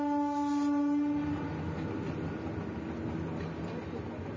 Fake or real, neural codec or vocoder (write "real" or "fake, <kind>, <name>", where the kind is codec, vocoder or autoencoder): real